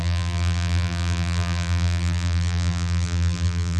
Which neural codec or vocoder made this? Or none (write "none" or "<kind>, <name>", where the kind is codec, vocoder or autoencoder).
vocoder, BigVGAN v2